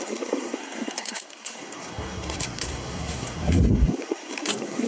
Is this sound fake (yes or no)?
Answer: yes